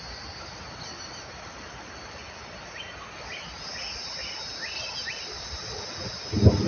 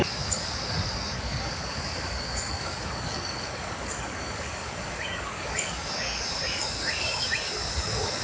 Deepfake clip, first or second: second